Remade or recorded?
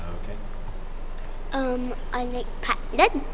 recorded